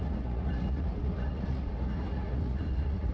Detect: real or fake fake